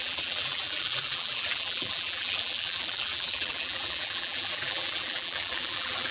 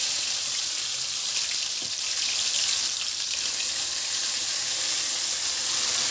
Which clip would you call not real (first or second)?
first